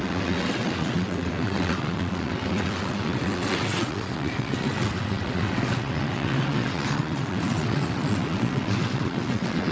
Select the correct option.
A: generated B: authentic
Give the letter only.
A